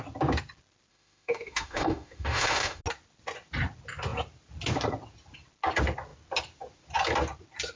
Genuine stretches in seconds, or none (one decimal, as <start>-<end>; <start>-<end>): 0.0-0.9; 2.8-7.8

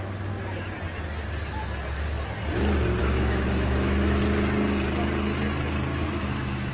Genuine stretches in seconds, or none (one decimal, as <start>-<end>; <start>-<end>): 0.0-3.0; 4.2-5.9

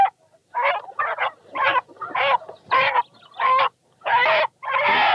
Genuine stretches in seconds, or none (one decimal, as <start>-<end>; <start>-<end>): 0.0-5.1

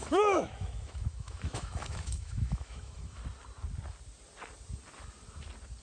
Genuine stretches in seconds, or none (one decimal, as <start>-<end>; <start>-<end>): 3.2-5.8